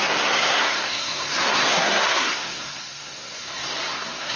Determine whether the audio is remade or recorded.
remade